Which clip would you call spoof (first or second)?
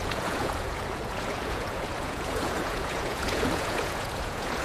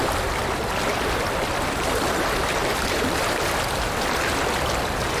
first